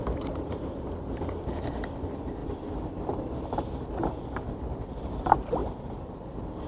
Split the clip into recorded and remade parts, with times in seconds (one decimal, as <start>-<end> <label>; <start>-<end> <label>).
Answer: 0.0-2.4 remade; 2.4-5.0 recorded; 5.0-5.6 remade; 5.6-6.7 recorded